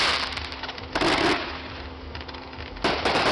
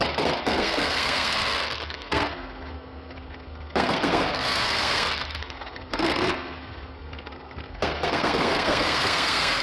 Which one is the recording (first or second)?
first